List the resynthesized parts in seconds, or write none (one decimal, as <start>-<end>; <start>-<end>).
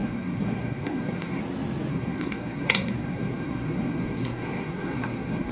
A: 0.0-1.4; 1.9-5.5